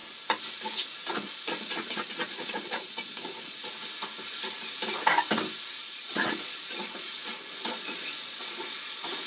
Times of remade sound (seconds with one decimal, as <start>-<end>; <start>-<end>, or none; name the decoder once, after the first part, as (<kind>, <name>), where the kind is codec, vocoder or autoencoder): 1.1-3.6 (vocoder, Vocos); 5.8-9.3